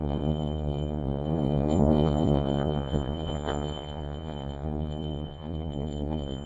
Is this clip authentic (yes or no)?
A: no